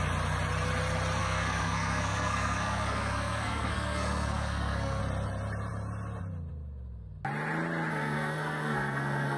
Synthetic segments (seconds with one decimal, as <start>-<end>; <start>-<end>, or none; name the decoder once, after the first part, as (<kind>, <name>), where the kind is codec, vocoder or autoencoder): 1.2-5.0 (codec, SNAC); 7.9-9.4